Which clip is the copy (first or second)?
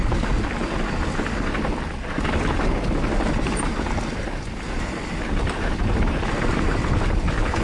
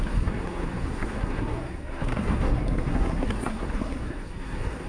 second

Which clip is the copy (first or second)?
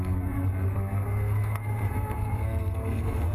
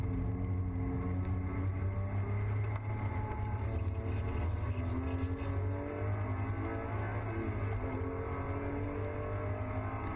first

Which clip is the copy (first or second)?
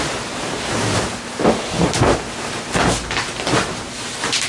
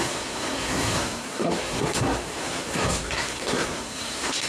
second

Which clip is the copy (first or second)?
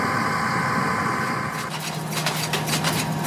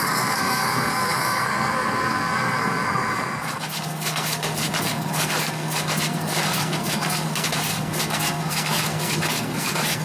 second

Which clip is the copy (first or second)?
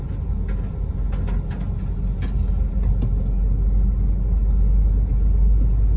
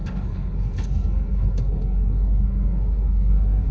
second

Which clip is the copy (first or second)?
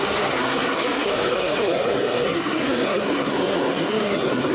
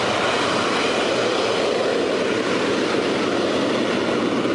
first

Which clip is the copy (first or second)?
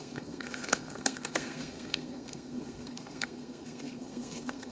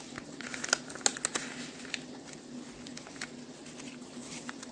first